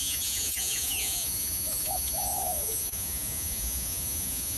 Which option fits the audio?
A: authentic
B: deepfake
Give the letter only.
B